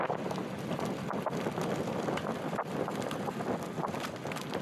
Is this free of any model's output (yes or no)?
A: yes